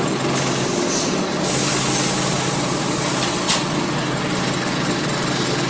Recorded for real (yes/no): yes